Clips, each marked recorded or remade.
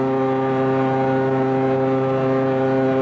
recorded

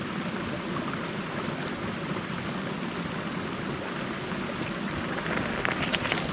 recorded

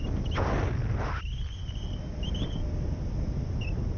recorded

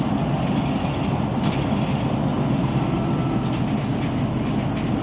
recorded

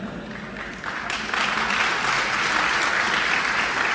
recorded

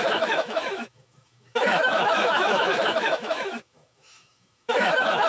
remade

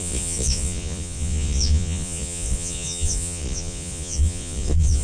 remade